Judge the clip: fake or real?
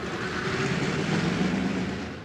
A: real